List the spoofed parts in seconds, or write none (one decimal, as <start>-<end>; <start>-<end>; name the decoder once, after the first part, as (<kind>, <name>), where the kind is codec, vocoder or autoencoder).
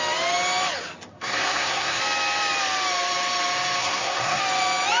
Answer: 1.1-2.0 (codec, SNAC); 3.8-4.4